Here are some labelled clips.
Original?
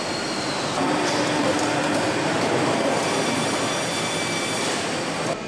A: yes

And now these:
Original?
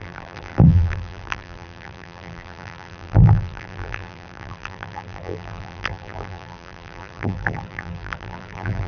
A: no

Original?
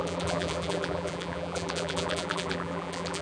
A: no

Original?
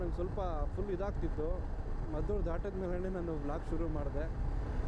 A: yes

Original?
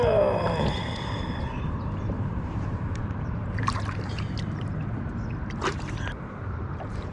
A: no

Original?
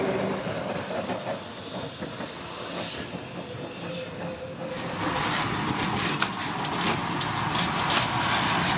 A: yes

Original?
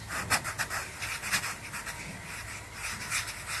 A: yes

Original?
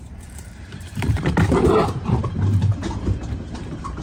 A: no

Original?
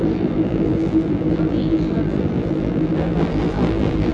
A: no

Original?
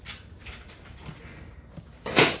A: no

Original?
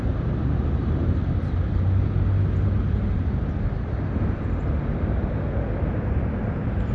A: yes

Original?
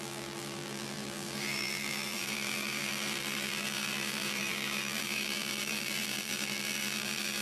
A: no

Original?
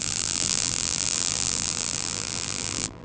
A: no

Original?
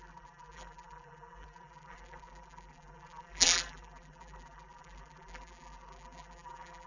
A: no